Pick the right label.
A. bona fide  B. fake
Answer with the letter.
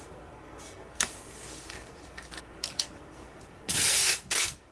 B